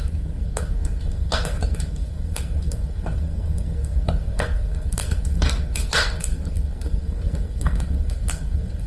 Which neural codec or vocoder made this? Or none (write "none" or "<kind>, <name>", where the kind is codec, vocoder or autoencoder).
codec, SNAC